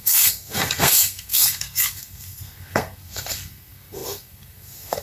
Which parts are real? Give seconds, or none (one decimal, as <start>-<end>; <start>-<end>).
none